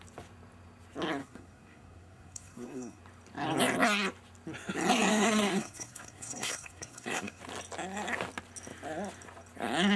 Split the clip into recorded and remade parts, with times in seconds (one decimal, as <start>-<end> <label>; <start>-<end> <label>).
0.0-1.2 recorded; 1.2-3.0 remade; 3.0-5.1 recorded; 5.1-7.4 remade; 7.4-10.0 recorded